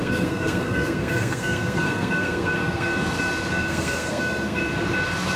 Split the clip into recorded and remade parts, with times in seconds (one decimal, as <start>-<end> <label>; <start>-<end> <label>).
0.0-2.9 remade; 2.9-3.5 recorded; 3.5-4.6 remade; 4.6-5.4 recorded